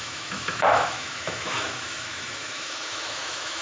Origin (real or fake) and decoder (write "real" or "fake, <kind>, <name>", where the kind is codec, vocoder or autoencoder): fake, autoencoder, DAC-VAE